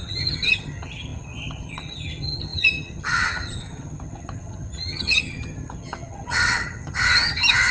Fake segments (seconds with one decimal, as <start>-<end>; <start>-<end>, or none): 0.0-7.7